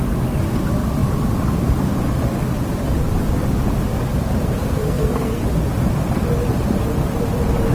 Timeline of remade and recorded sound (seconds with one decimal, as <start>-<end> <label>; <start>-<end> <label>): 0.0-4.4 recorded; 4.4-5.4 remade; 5.4-7.7 recorded